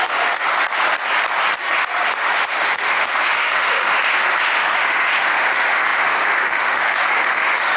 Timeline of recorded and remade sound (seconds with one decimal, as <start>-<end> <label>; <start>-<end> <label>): 0.0-0.5 remade; 0.5-2.1 recorded; 2.1-3.8 remade; 3.8-4.4 recorded; 4.4-7.8 remade